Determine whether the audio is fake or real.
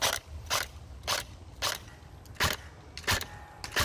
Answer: real